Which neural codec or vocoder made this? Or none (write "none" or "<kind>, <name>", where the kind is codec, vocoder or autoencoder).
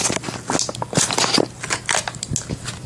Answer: none